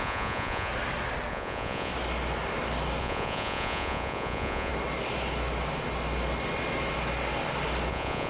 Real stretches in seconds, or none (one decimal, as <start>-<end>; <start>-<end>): 0.7-1.3; 1.9-3.0; 4.7-7.9